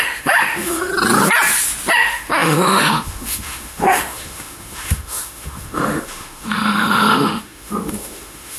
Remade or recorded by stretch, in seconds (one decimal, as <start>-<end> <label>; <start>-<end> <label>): 0.0-0.9 remade; 0.9-1.9 recorded; 1.9-8.6 remade